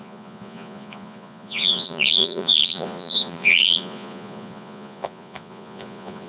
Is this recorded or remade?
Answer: remade